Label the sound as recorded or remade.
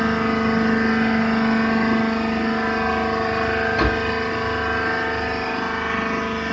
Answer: recorded